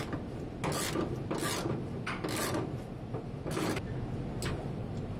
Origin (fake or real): real